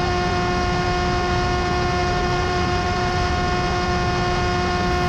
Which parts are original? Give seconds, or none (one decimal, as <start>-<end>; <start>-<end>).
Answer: 0.0-2.0; 3.3-5.1